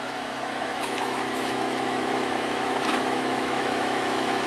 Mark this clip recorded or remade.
remade